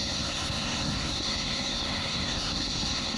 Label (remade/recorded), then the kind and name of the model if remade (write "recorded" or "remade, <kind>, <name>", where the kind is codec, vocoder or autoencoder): remade, codec, SNAC